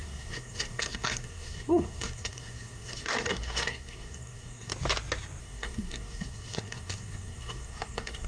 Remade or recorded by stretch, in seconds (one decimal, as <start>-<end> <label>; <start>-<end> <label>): 0.0-4.7 remade; 4.7-5.4 recorded; 5.4-8.3 remade